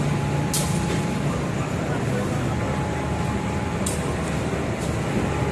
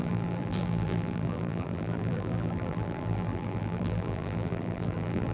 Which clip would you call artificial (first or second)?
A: second